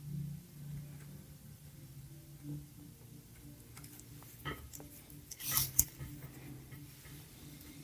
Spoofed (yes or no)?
yes